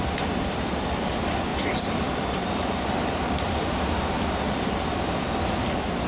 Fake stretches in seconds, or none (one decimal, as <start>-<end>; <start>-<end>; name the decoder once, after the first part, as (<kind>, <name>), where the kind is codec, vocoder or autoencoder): 1.5-4.9 (vocoder, BigVGAN v2)